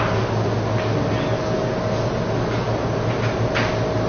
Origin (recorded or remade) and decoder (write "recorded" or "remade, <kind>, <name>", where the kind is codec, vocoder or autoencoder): recorded